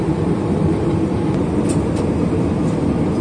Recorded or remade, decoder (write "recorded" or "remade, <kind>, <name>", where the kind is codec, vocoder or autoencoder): remade, vocoder, BigVGAN v2